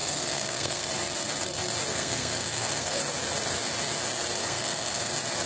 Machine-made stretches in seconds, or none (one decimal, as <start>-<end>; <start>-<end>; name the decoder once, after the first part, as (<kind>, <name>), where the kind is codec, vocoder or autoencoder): 0.0-0.9 (codec, SNAC); 1.9-3.0; 4.4-5.1

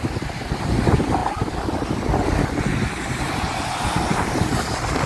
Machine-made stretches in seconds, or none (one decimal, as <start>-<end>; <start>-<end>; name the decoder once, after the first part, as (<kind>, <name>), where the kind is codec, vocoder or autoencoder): none

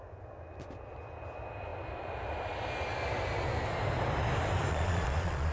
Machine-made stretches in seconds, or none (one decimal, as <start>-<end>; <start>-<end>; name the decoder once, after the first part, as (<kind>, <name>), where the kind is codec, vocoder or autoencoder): 4.7-5.5 (vocoder, Vocos)

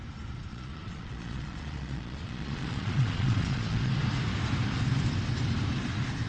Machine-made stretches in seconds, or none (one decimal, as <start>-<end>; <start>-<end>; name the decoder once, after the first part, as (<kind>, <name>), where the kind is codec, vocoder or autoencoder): 0.5-3.9 (vocoder, Vocos)

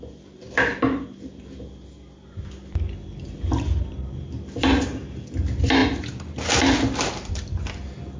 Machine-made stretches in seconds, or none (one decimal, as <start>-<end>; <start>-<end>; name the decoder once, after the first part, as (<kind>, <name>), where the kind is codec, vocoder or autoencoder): none